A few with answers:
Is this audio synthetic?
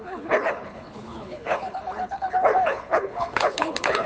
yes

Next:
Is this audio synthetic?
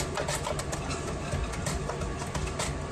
no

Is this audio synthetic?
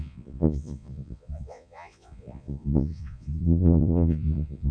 yes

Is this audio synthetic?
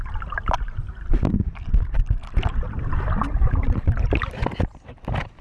no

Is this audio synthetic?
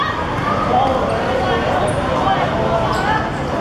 no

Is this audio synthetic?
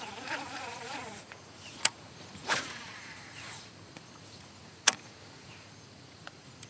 yes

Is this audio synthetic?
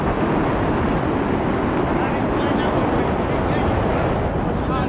no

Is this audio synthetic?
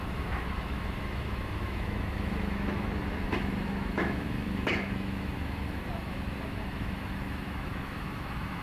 yes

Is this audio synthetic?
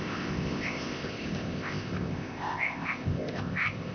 yes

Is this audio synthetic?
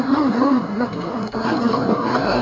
yes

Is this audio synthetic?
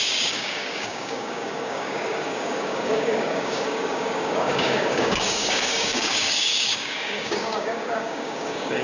yes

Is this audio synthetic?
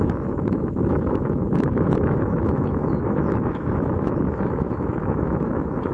yes